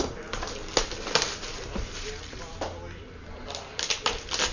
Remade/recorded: recorded